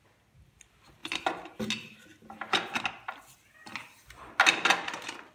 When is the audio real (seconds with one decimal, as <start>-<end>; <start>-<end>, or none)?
0.0-5.3